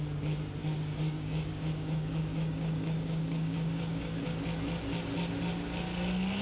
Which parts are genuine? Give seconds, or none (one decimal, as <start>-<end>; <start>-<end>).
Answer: 0.0-0.6; 4.4-6.4